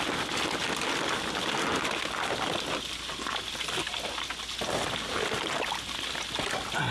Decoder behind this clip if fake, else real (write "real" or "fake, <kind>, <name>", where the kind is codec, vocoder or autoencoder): real